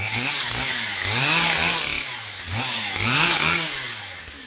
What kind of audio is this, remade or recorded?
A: remade